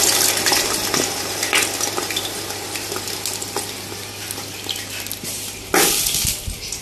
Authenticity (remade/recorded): recorded